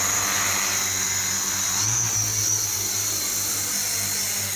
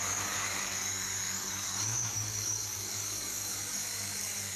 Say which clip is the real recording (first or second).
first